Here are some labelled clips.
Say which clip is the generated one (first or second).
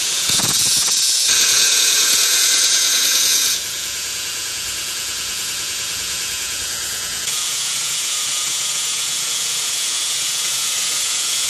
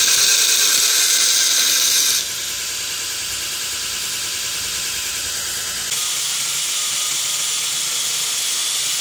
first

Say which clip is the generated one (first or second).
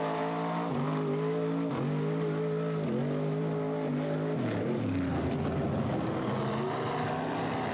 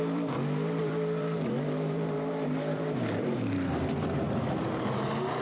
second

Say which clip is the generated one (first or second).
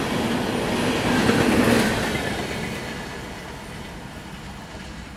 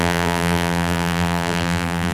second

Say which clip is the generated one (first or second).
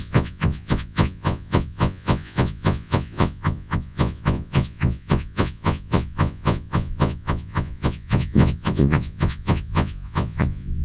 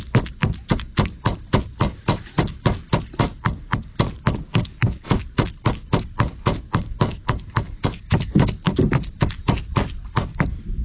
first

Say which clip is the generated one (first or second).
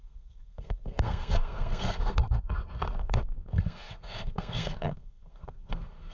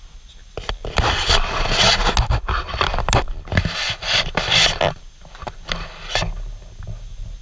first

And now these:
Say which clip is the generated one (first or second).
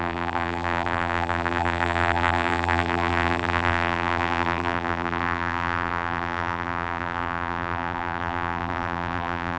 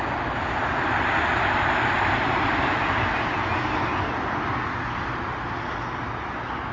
first